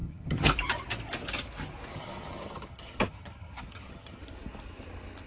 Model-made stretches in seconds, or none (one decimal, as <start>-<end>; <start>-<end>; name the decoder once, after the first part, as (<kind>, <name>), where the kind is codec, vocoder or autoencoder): 0.0-0.5 (vocoder, HiFi-GAN); 1.9-4.2